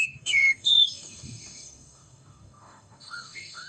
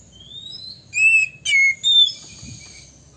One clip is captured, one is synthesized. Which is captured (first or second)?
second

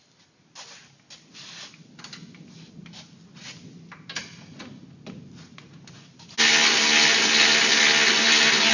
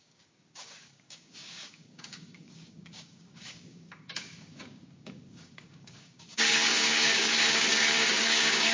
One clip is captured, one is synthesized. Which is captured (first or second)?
first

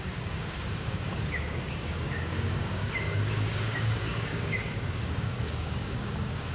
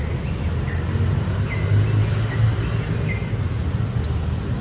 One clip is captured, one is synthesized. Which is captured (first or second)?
second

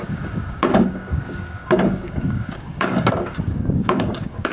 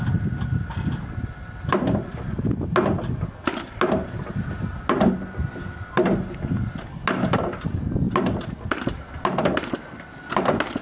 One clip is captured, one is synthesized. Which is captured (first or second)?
second